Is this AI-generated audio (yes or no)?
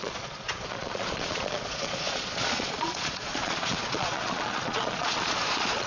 yes